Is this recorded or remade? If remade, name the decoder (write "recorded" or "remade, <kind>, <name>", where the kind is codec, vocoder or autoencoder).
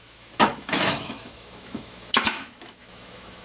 remade, autoencoder, DAC-VAE